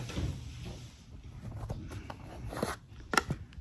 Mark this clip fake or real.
real